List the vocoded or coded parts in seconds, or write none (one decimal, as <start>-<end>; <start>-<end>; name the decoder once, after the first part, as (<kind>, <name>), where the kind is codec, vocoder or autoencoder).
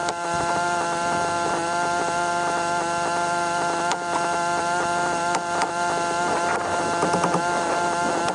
none